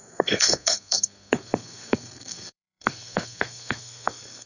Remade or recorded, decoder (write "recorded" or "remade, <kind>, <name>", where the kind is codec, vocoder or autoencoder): remade, codec, SNAC